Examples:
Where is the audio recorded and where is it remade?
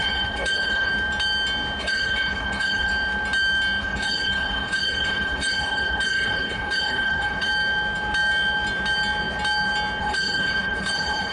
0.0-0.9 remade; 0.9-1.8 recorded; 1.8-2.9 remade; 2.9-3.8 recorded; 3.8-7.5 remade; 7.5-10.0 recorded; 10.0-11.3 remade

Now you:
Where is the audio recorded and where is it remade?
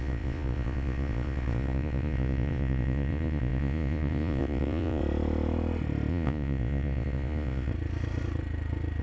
0.0-5.0 remade; 5.0-6.1 recorded; 6.1-7.7 remade; 7.7-9.0 recorded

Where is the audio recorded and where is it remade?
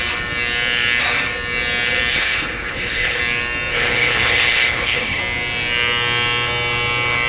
0.0-2.1 recorded; 2.1-3.2 remade; 3.2-3.7 recorded; 3.7-5.2 remade; 5.2-7.3 recorded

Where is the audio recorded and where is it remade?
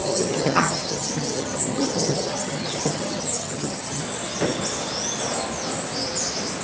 0.0-4.0 remade; 4.0-6.6 recorded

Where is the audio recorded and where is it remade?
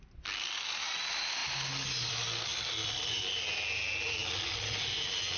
0.0-5.4 recorded